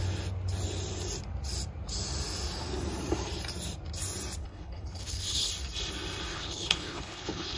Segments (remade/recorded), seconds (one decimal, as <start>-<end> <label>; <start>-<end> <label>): 0.0-4.4 recorded; 4.4-5.5 remade; 5.5-6.3 recorded; 6.3-7.6 remade